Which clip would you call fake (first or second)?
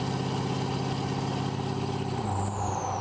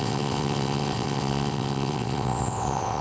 second